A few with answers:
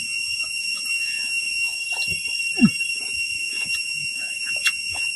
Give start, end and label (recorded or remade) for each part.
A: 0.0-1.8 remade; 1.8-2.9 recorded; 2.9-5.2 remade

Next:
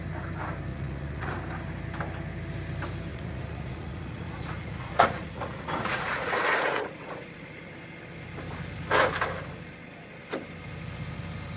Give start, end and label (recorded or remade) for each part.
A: 0.0-0.7 recorded; 0.7-1.3 remade; 1.3-3.1 recorded; 3.1-7.7 remade; 7.7-11.6 recorded

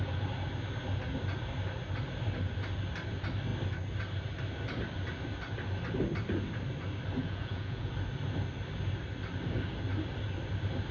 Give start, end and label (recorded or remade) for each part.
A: 0.0-7.2 recorded; 7.2-7.9 remade; 7.9-10.9 recorded